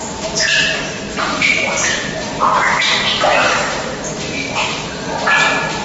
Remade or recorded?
remade